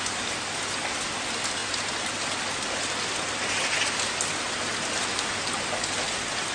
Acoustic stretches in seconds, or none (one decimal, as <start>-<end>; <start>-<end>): 0.0-6.5

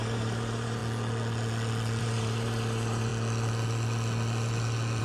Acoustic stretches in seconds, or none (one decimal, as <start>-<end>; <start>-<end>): 0.8-2.0; 3.1-5.0

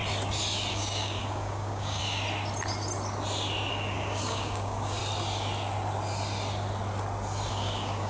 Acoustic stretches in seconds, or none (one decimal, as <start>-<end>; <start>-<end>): 0.0-0.7; 2.0-3.7; 5.0-7.5

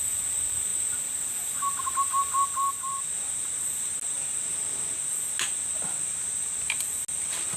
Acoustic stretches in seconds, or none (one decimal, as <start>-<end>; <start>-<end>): 0.0-7.6

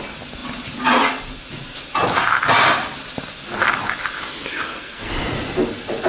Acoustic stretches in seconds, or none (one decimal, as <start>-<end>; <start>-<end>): 0.0-4.5; 5.1-6.1

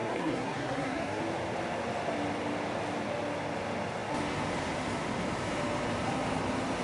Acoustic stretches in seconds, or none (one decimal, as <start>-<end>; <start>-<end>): 1.2-6.8

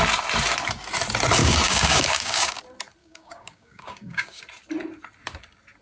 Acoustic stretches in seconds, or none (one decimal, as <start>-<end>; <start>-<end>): 0.0-1.4; 2.6-3.0; 4.4-5.8

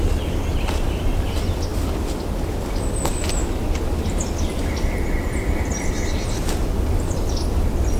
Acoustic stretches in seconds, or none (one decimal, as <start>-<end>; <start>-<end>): 0.0-8.0